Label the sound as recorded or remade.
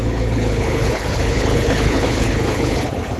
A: remade